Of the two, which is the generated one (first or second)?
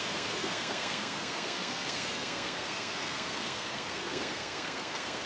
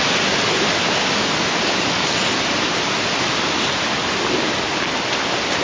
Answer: first